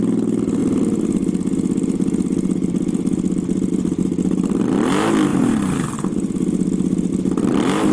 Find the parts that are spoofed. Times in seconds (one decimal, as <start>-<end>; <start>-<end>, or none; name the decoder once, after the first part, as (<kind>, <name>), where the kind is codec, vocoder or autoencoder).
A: none